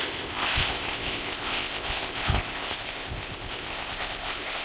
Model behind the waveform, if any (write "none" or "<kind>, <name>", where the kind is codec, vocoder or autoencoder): codec, ZipCodec